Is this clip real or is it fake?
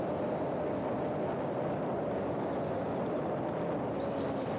real